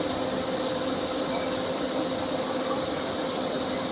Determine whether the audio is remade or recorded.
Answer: recorded